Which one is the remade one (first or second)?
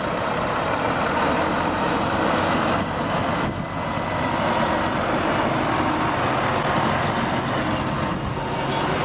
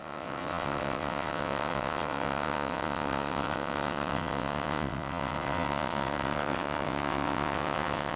second